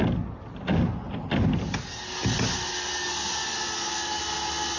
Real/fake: real